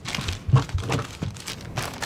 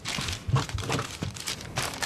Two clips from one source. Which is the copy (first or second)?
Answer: second